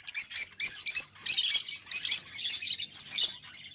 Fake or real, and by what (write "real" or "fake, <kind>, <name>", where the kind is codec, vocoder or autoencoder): real